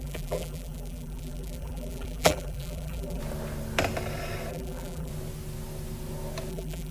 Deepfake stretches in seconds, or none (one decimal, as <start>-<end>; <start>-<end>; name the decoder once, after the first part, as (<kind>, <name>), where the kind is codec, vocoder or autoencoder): 0.0-3.2 (vocoder, BigVGAN v2); 4.5-5.1; 6.5-6.9